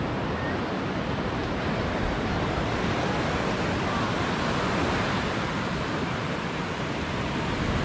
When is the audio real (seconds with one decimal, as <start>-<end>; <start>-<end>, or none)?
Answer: 0.0-1.4; 2.7-7.8